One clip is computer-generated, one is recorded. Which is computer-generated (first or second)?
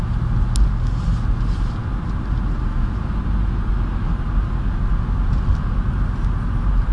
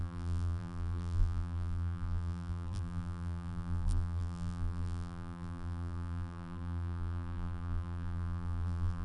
second